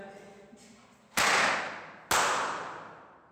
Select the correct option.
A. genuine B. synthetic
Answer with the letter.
A